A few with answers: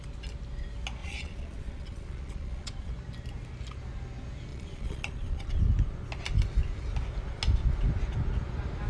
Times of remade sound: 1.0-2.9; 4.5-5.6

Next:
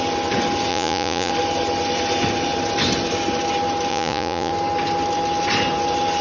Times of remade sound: 0.7-1.3; 3.9-4.5

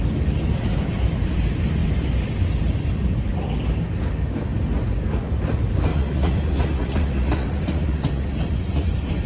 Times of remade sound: 5.9-8.9